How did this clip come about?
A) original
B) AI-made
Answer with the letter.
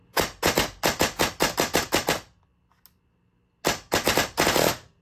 A